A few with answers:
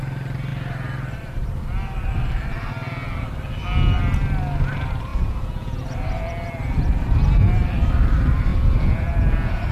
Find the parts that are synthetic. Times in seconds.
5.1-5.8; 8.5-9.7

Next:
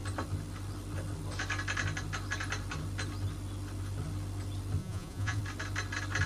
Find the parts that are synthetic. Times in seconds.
4.8-5.4

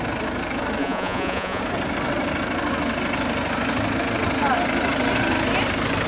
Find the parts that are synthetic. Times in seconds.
0.8-1.6

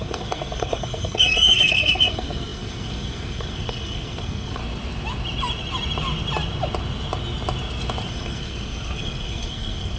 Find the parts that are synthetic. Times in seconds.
0.0-4.6; 8.1-10.0

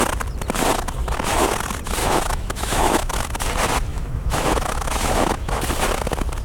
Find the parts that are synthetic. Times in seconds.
2.0-3.3; 3.9-5.6

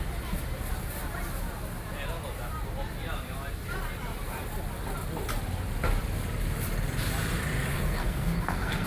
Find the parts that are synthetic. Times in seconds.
7.7-8.9

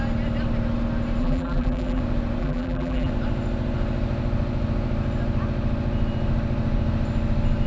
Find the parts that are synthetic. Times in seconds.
1.2-2.0; 2.4-3.1

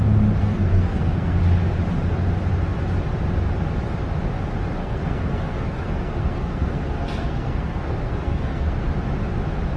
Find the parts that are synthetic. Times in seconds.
0.4-1.4; 4.8-8.9